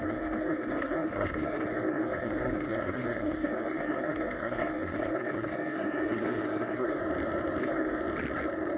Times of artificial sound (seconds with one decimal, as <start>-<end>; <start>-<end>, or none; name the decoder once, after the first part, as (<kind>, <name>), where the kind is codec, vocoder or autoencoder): 0.0-7.0 (codec, SNAC); 7.6-8.0